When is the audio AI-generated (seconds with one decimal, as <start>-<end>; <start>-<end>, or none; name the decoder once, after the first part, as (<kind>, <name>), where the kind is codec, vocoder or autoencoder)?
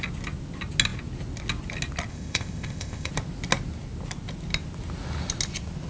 2.1-3.1 (codec, ZipCodec)